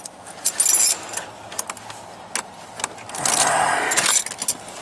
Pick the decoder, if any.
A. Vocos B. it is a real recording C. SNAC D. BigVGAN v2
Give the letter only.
B